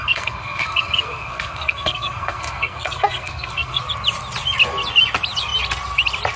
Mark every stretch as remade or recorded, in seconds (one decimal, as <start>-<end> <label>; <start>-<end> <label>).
0.0-3.8 remade; 3.8-6.4 recorded